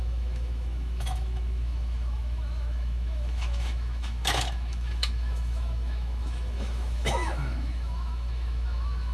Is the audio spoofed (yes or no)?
yes